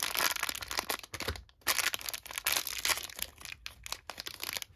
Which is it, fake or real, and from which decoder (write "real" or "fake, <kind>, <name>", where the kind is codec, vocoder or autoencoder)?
real